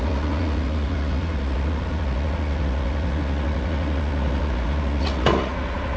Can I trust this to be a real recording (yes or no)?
no